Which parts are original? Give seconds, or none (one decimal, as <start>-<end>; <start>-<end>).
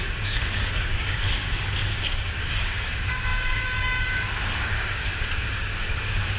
none